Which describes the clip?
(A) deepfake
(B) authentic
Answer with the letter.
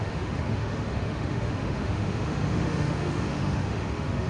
A